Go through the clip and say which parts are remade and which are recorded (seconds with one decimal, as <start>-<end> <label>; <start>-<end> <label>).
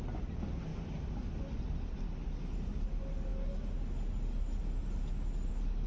0.0-5.9 recorded